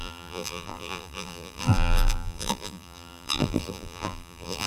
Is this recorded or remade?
remade